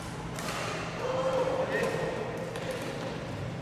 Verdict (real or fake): real